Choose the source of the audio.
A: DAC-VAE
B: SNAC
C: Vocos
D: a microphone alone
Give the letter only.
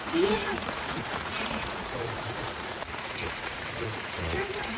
C